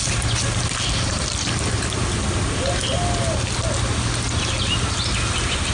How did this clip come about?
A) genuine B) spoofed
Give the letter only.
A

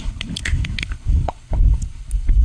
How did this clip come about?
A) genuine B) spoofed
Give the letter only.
B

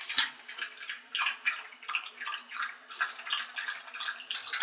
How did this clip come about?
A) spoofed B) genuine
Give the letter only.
B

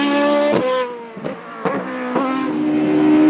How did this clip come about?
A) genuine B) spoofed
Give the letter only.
A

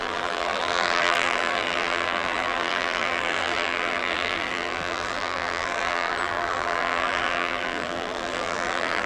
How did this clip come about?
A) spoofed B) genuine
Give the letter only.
A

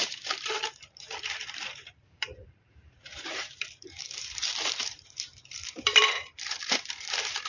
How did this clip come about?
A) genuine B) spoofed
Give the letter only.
B